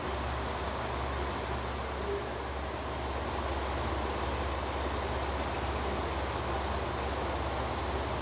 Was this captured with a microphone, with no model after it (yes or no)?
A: yes